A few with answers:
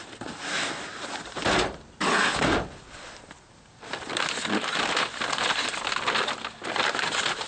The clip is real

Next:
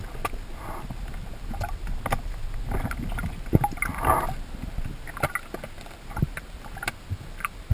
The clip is real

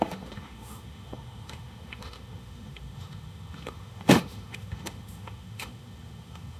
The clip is fake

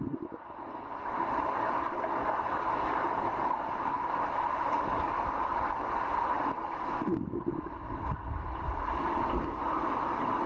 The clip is real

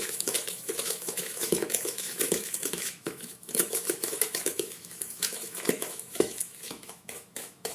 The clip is fake